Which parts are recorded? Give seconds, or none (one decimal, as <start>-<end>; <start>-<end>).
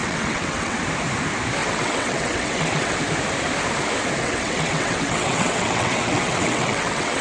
0.8-1.6; 2.9-4.2